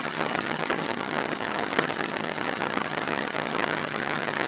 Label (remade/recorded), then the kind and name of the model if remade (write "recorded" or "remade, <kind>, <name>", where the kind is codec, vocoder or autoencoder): remade, vocoder, HiFi-GAN